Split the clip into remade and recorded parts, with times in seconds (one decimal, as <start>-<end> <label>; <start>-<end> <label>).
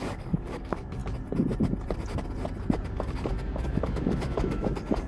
0.0-1.0 remade; 1.0-2.9 recorded; 2.9-5.1 remade